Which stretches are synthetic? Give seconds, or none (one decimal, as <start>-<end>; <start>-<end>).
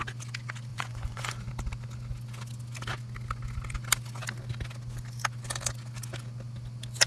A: 0.7-1.5